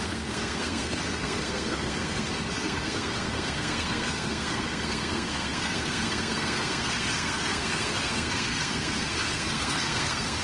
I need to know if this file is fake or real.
fake